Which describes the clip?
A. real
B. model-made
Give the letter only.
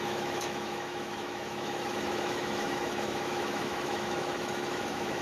B